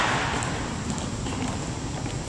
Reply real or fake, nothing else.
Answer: fake